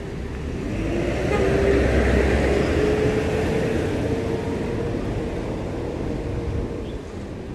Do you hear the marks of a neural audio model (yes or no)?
no